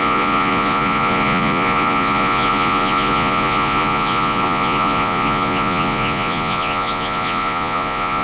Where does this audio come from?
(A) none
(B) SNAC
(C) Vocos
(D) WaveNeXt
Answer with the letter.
C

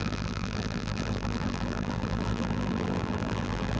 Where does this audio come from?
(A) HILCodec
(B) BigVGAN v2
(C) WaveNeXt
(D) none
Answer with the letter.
B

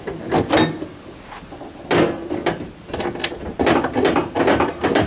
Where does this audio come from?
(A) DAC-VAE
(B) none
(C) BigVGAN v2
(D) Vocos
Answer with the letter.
B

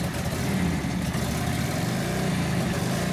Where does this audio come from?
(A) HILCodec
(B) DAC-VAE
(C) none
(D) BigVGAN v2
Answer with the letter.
C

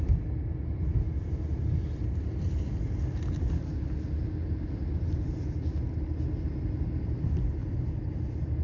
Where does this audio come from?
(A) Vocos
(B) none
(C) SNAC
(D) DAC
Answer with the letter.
B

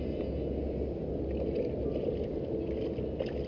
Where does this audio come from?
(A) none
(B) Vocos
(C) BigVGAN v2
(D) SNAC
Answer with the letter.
A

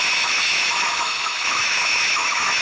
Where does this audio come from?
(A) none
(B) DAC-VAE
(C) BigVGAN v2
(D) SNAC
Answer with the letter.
B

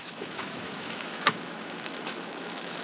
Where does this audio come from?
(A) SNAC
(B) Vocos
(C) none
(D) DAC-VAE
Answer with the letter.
D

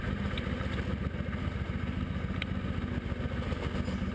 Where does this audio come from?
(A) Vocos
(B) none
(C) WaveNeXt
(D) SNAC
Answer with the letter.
B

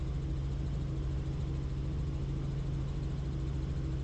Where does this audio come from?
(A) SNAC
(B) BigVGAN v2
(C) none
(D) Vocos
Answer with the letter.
C